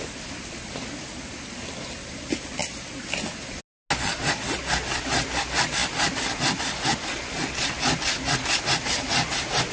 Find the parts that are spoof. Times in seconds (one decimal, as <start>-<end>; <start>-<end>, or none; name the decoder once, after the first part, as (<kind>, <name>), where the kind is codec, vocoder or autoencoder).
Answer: none